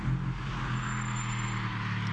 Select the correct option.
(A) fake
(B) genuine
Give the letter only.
B